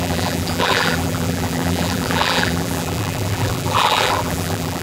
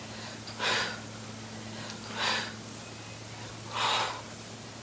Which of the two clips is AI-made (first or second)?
first